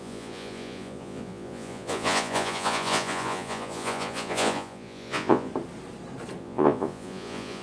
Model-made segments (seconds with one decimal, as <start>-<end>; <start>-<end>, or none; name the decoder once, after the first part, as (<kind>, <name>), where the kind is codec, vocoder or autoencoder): 0.0-5.5 (vocoder, Vocos); 6.4-7.6